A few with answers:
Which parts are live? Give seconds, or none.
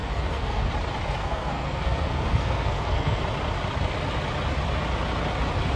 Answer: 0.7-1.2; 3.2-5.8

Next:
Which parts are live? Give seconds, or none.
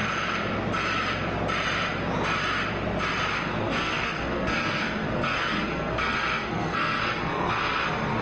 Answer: 0.0-3.6